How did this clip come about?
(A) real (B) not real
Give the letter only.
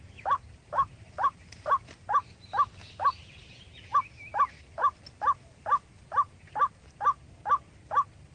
A